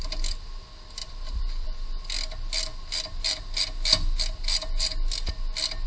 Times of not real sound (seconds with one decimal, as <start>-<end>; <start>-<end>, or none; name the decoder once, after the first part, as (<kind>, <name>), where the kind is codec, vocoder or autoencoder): 1.0-2.0 (vocoder, BigVGAN v2)